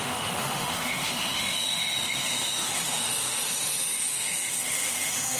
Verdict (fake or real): fake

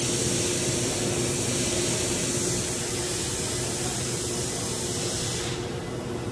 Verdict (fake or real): real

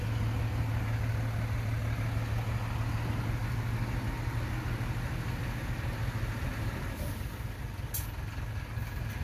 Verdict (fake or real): real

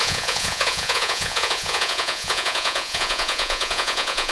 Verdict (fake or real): fake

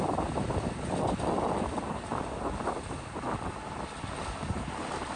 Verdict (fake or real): real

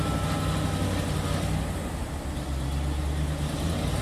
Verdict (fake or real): real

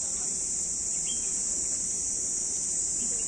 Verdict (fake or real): real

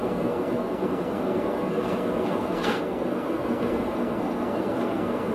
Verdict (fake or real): fake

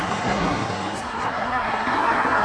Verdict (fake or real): fake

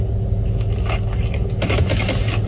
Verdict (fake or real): real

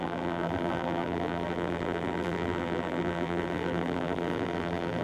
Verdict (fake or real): fake